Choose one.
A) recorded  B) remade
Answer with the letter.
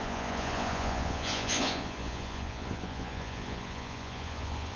B